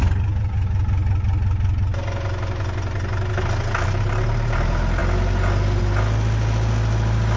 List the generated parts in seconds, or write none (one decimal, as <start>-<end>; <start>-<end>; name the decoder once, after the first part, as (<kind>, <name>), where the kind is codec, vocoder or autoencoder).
none